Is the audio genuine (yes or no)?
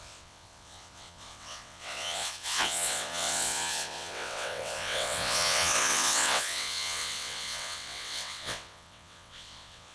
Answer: no